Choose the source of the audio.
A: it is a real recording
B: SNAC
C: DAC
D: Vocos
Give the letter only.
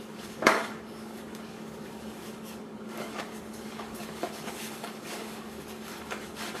C